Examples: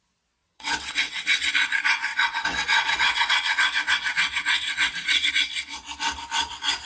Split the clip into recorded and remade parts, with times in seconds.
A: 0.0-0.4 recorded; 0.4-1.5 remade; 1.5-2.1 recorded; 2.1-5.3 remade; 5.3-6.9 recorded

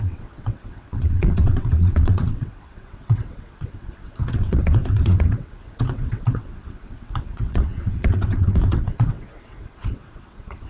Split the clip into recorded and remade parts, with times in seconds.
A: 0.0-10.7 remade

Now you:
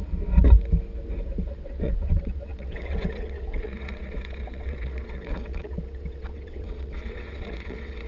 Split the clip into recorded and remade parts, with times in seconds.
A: 0.0-1.5 recorded; 1.5-8.1 remade

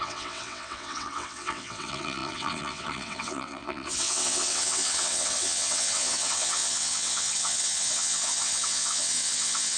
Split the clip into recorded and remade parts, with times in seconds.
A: 0.0-9.8 remade